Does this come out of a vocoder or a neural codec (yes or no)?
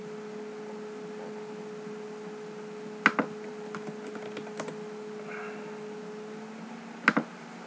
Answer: no